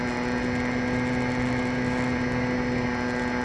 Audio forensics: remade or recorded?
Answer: recorded